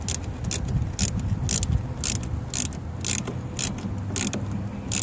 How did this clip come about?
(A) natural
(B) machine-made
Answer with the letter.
A